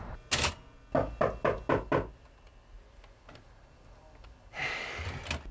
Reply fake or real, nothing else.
real